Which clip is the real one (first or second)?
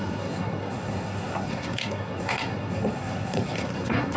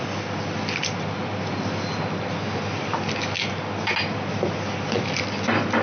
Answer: second